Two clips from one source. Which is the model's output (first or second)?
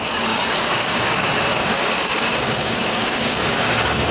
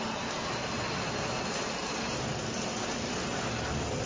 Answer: first